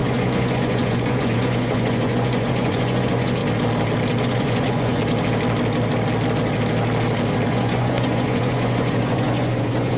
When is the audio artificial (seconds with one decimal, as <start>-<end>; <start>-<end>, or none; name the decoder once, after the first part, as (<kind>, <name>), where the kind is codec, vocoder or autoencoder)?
0.0-3.4 (vocoder, Vocos); 4.2-5.0; 7.5-10.0